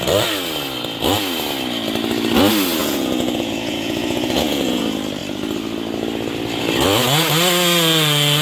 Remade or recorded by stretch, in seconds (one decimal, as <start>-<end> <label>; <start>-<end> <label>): 0.0-2.8 recorded; 2.8-4.8 remade; 4.8-8.4 recorded